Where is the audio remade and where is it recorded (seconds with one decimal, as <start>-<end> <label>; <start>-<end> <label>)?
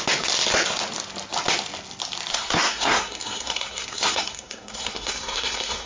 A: 0.0-2.3 recorded; 2.3-5.9 remade